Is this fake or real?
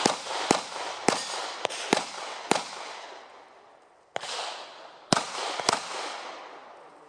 fake